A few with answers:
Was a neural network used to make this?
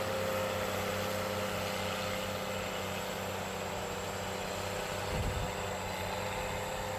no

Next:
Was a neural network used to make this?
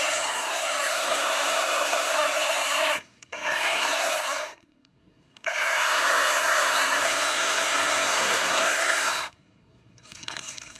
yes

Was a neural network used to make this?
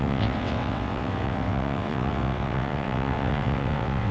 yes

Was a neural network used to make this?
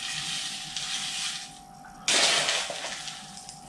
no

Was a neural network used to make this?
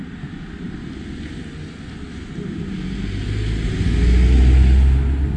no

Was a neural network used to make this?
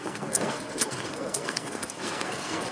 yes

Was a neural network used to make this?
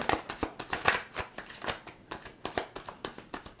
no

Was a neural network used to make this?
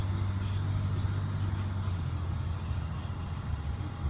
no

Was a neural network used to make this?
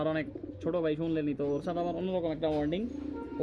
no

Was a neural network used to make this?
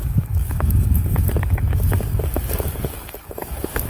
yes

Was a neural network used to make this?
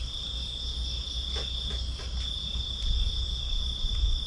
no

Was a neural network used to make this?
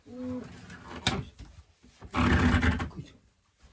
no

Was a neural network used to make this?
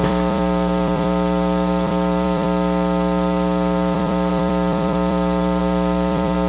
yes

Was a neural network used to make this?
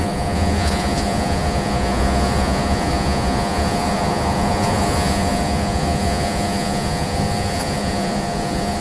yes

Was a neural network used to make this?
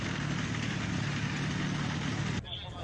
no